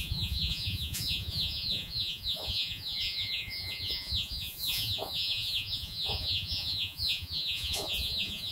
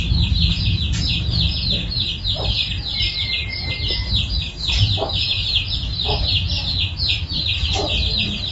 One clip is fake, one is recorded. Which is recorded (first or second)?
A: second